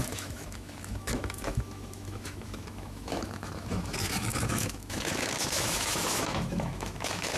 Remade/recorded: remade